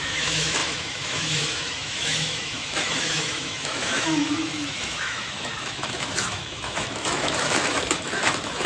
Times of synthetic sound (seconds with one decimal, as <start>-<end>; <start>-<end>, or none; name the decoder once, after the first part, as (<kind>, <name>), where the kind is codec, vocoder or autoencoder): 0.0-8.7 (autoencoder, DAC-VAE)